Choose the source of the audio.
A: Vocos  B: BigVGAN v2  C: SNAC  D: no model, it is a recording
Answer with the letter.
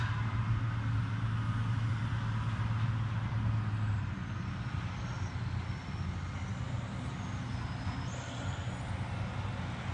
D